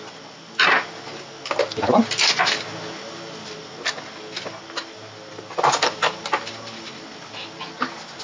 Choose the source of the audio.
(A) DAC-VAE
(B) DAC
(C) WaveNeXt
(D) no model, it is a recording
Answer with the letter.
D